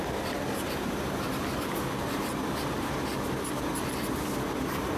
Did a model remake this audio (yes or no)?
no